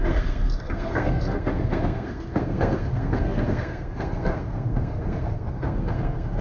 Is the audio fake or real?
fake